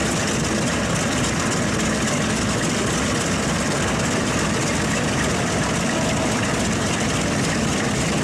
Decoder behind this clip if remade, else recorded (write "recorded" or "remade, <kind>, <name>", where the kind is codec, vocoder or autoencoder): recorded